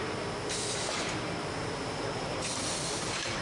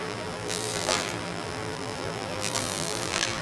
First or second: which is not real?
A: second